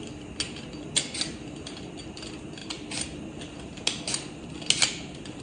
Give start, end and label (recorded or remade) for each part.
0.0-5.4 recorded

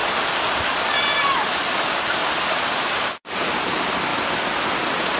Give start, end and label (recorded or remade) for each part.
0.0-0.9 recorded; 0.9-2.2 remade; 2.2-2.8 recorded; 2.8-4.1 remade; 4.1-4.8 recorded; 4.8-5.2 remade

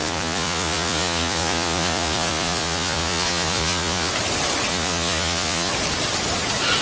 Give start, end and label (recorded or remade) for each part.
0.0-4.1 remade; 4.1-4.7 recorded; 4.7-5.7 remade; 5.7-6.8 recorded

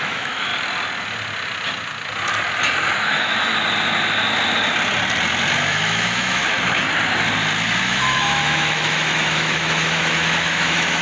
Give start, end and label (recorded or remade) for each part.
0.0-0.5 remade; 0.5-2.9 recorded; 2.9-3.5 remade; 3.5-5.7 recorded; 5.7-6.4 remade; 6.4-7.8 recorded; 7.8-11.0 remade